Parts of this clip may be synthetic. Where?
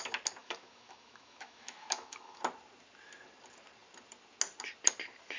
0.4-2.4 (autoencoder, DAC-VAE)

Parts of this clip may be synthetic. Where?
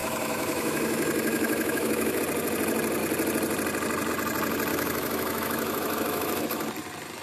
0.0-2.2 (autoencoder, DAC-VAE); 4.7-6.7